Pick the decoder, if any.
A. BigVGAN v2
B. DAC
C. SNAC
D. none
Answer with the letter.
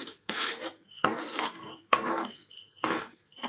C